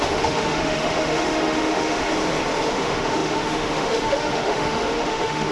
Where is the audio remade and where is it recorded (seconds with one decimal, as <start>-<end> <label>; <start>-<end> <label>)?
0.0-2.1 remade; 2.1-2.7 recorded; 2.7-5.5 remade